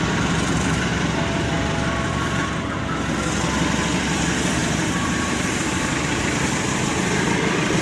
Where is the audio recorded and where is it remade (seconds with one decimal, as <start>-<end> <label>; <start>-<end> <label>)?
0.0-4.6 recorded; 4.6-6.7 remade; 6.7-7.8 recorded

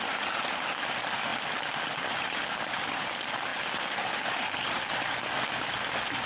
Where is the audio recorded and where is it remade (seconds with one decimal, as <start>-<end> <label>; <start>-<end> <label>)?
0.0-6.3 recorded